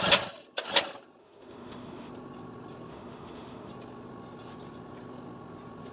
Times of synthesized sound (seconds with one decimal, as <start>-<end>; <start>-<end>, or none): 1.2-2.1; 2.9-3.7